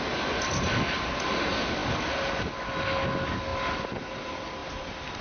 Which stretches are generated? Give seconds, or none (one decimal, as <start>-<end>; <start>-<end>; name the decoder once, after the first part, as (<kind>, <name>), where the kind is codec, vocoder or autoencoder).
none